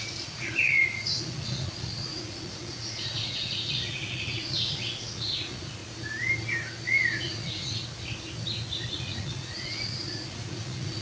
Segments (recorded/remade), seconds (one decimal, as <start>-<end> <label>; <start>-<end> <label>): 0.0-5.8 remade; 5.8-7.2 recorded; 7.2-7.8 remade; 7.8-8.9 recorded; 8.9-11.0 remade